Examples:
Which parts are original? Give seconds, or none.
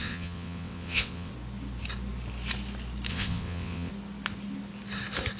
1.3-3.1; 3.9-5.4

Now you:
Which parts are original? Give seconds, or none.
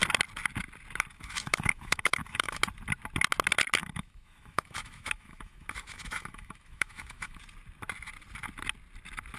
0.0-1.1; 2.6-3.8; 7.4-9.4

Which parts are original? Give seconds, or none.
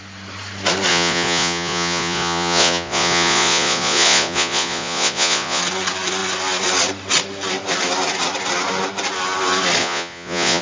0.0-0.9; 5.6-9.8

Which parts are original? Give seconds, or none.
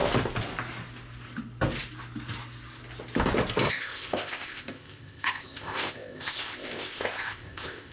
0.0-3.7